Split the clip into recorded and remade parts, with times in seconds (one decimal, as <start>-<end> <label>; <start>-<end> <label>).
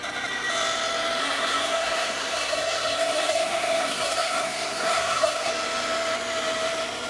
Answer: 0.0-1.2 recorded; 1.2-5.5 remade; 5.5-7.1 recorded